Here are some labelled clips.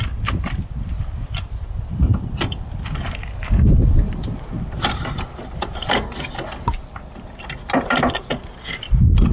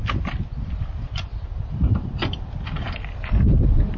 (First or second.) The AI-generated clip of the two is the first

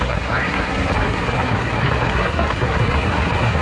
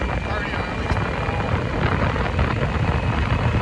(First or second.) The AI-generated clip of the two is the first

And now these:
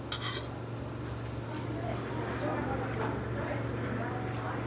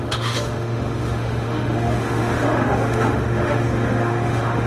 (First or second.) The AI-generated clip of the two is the second